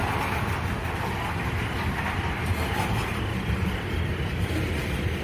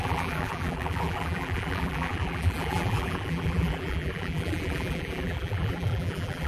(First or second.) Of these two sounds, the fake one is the second